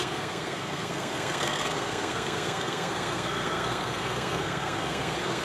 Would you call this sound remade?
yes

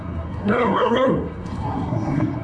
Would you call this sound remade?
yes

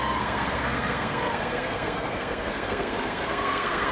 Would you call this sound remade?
yes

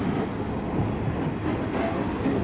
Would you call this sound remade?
no